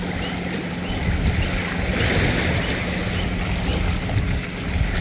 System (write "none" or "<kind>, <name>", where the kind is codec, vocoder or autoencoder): none